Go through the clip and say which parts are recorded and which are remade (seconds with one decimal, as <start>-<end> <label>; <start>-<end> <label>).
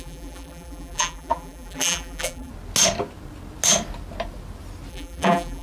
0.0-2.5 remade; 2.5-4.9 recorded; 4.9-5.6 remade